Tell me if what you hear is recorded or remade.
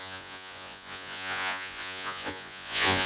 remade